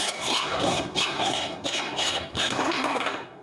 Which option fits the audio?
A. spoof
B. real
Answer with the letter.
A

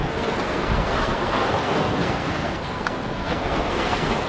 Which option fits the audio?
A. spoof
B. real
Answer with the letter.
A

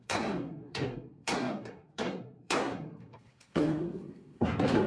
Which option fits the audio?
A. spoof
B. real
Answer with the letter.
A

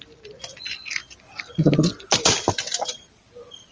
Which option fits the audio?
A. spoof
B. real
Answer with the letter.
B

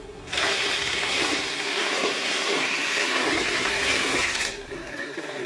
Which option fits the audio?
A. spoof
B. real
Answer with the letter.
A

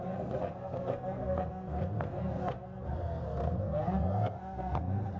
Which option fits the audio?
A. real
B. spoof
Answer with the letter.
B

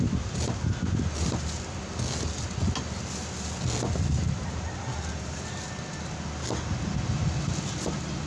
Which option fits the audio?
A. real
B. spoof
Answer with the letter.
A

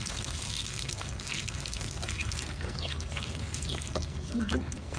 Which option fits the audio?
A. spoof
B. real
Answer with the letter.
A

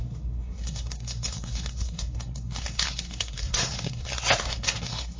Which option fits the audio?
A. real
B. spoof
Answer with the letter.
B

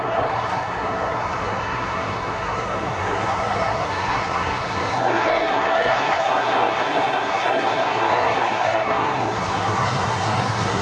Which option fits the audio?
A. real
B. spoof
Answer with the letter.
B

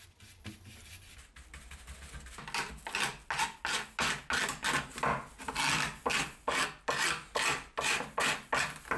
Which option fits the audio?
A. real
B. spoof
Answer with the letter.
A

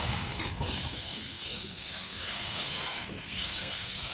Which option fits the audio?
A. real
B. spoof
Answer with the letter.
B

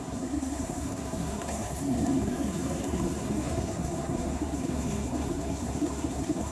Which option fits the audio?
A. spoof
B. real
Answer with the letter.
A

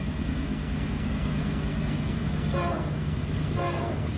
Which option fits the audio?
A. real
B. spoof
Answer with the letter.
B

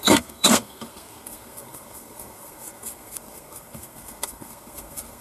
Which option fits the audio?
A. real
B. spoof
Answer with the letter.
B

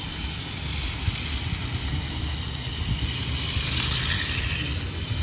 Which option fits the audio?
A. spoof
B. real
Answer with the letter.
B